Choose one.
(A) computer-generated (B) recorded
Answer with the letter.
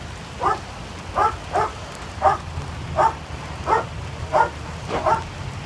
B